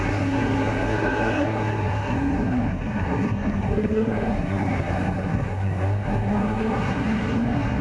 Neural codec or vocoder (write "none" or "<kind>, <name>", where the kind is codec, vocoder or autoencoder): codec, SNAC